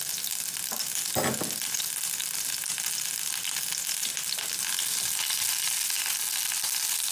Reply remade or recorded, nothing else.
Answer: recorded